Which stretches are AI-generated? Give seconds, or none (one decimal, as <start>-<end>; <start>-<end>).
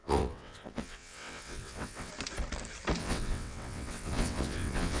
0.0-2.1; 3.0-5.0